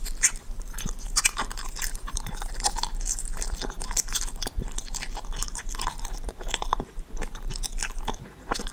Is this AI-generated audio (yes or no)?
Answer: yes